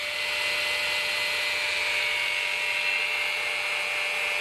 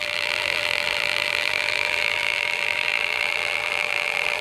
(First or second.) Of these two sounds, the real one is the first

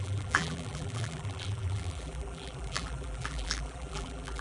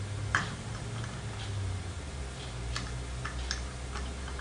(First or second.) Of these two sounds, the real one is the second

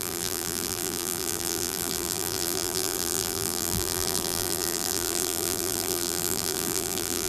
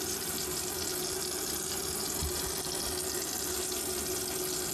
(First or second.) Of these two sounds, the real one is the second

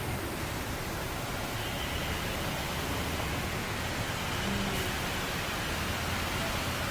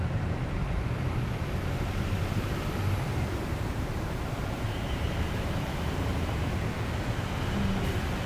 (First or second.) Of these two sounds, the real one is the first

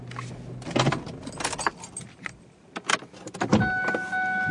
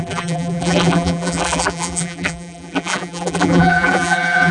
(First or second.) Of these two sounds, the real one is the first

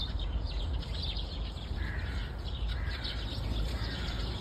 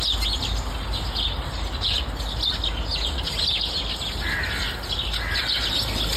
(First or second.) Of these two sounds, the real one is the second